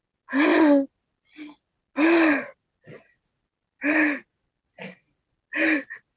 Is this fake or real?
real